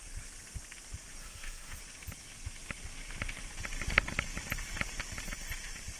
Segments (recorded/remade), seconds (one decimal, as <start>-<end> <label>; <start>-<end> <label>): 0.0-1.2 recorded; 1.2-1.8 remade; 1.8-6.0 recorded